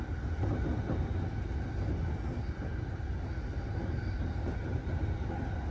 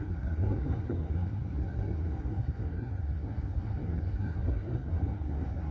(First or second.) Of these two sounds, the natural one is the first